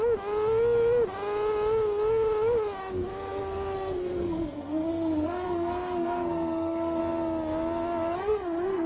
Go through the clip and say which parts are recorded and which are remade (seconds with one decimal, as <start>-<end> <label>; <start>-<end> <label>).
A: 0.0-2.8 recorded; 2.8-7.0 remade; 7.0-8.1 recorded; 8.1-8.9 remade